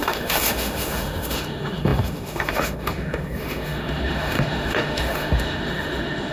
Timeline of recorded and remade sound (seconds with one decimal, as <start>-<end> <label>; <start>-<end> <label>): 0.0-6.3 remade